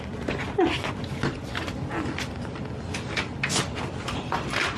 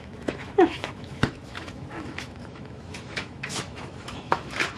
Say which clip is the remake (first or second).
second